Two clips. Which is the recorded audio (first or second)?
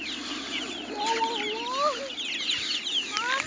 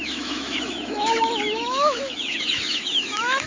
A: first